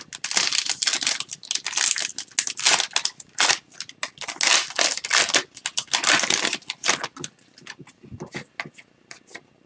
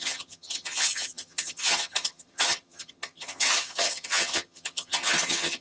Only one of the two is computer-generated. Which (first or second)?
second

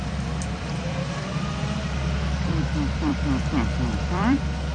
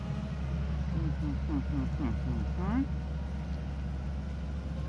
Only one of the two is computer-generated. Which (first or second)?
first